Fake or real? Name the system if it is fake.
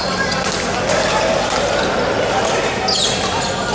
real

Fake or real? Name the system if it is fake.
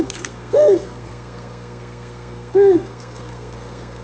fake, codec, SNAC